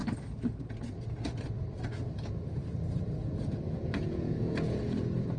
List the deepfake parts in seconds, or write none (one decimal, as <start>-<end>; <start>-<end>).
3.2-5.4